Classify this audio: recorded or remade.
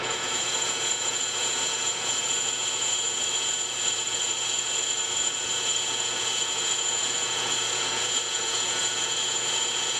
remade